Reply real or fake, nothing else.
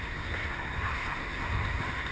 fake